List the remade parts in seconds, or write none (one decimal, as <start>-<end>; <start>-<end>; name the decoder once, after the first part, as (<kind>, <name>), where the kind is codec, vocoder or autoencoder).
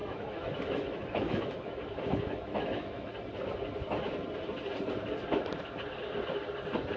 0.0-3.1 (autoencoder, DAC-VAE)